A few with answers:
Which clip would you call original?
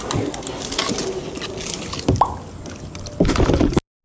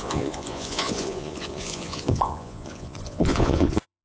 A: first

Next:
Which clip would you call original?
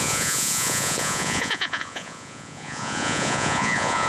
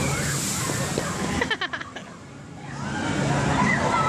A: second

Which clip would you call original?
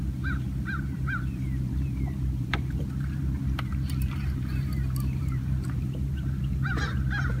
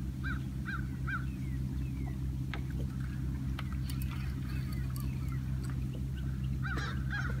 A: second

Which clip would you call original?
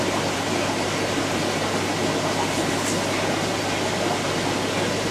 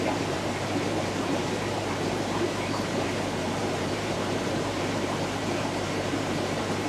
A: first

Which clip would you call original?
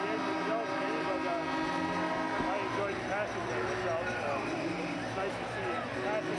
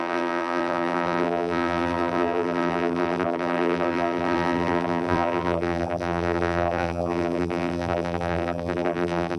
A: first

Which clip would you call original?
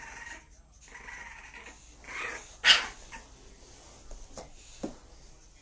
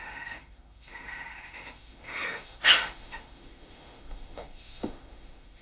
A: first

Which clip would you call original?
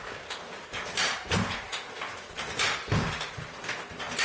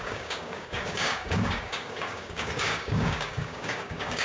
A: first